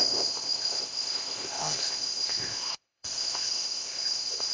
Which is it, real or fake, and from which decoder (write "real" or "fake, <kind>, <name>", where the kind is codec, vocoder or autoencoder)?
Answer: fake, codec, ZipCodec